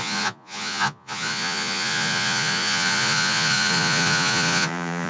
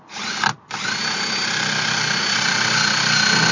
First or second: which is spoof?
first